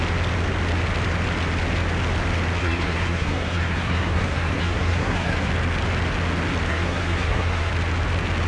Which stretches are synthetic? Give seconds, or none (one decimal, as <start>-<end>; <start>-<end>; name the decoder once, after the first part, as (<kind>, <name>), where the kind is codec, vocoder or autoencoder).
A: 2.6-5.5 (codec, SNAC); 6.7-7.7